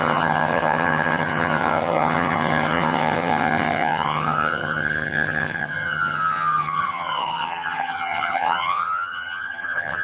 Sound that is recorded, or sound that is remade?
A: remade